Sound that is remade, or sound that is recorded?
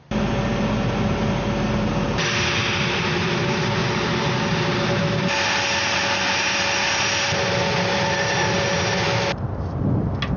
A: recorded